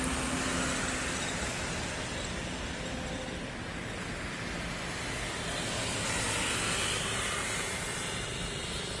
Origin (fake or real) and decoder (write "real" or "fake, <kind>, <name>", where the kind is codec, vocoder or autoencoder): real